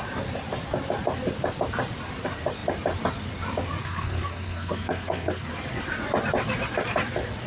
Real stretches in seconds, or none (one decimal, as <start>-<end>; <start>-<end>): 0.0-3.8; 5.5-7.5